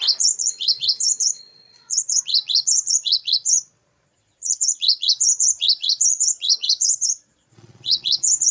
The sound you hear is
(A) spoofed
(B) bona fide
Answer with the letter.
A